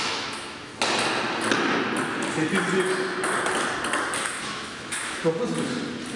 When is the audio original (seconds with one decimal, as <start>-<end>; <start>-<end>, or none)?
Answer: 0.7-4.4; 5.2-6.2